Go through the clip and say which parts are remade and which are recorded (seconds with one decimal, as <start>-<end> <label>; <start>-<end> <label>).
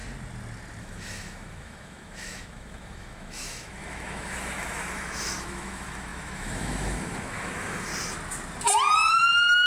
0.0-0.8 recorded; 0.8-7.9 remade; 7.9-9.1 recorded; 9.1-9.7 remade